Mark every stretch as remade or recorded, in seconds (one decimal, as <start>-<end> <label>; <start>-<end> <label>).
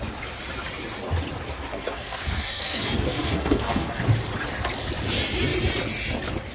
0.0-1.7 recorded; 1.7-4.0 remade; 4.0-6.5 recorded